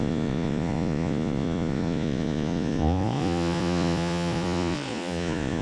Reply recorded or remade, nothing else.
remade